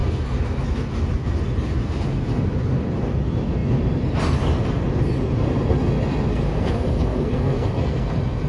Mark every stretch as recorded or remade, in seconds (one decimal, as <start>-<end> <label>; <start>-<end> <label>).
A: 0.0-6.3 recorded; 6.3-8.1 remade; 8.1-8.5 recorded